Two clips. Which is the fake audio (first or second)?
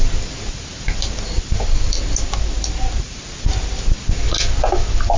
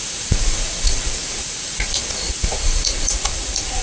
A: second